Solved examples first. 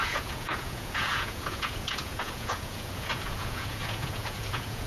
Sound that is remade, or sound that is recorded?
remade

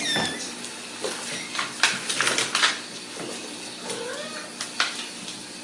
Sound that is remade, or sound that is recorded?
recorded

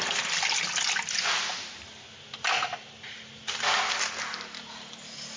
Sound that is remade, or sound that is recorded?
recorded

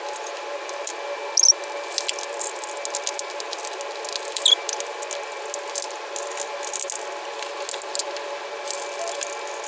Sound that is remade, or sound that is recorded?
recorded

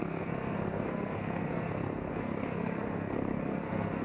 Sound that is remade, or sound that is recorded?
remade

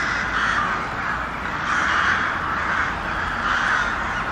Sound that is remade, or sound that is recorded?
recorded